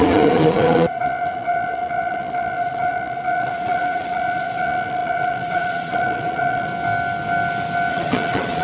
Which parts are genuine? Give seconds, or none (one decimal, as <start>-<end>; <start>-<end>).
6.7-7.9